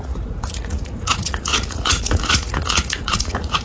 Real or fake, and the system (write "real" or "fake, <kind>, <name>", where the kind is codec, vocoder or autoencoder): fake, vocoder, Vocos